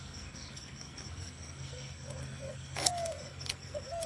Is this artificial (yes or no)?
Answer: yes